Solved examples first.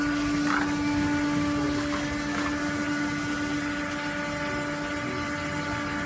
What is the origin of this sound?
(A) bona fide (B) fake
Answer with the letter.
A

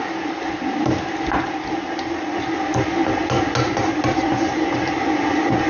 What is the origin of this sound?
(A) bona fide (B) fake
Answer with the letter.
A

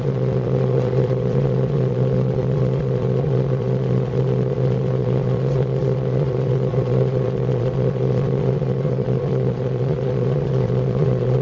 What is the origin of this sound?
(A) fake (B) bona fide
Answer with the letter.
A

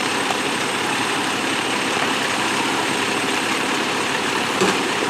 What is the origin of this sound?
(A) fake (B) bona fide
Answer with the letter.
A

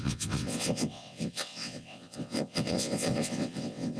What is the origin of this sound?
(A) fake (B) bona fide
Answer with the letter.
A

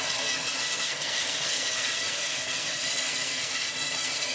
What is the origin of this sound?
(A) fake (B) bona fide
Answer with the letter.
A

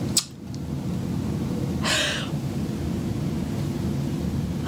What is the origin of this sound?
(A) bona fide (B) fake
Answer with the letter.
A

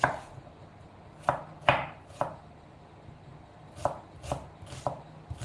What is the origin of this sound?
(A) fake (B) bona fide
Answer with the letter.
B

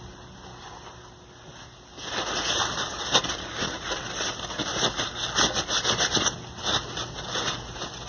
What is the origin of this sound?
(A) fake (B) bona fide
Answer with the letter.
B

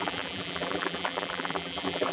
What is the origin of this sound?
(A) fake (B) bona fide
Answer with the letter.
A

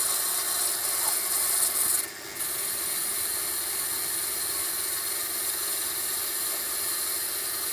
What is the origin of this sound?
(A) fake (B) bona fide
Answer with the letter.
B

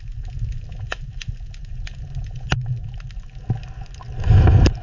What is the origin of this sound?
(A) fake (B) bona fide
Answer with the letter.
B